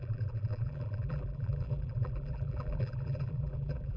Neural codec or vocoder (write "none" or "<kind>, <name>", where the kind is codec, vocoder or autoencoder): vocoder, BigVGAN v2